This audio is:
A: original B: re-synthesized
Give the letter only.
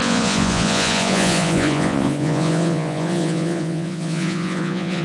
B